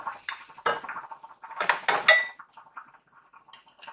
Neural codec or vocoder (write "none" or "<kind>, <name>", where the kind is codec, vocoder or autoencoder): none